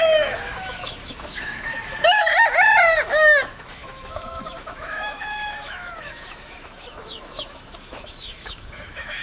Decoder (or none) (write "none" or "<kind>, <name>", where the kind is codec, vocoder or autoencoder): autoencoder, DAC-VAE